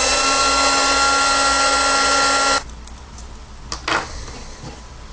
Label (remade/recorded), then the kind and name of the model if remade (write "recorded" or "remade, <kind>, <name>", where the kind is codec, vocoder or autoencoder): recorded